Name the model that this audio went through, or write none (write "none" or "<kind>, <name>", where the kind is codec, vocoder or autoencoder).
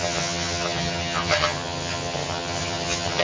vocoder, HiFi-GAN